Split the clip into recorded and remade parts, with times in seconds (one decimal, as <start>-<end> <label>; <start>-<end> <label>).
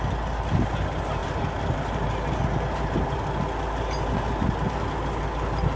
0.0-5.8 recorded